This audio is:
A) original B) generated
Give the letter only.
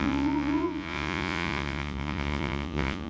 B